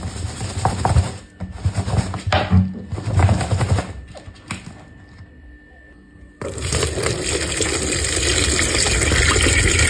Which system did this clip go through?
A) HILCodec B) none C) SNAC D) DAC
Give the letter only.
B